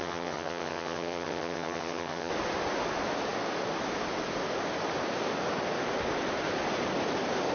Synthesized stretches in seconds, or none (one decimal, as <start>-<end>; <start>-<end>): 0.0-2.3